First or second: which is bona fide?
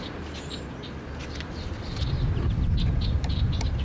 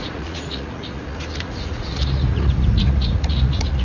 first